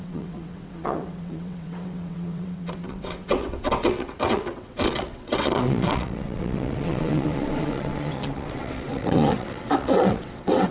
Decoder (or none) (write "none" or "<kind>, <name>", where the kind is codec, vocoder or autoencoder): vocoder, WaveNeXt